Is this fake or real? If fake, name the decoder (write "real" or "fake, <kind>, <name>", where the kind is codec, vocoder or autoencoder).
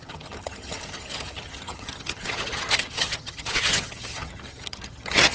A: fake, vocoder, HiFi-GAN